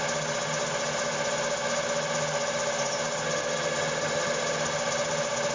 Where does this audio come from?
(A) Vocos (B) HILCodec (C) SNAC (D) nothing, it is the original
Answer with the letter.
D